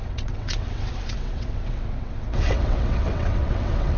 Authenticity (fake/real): fake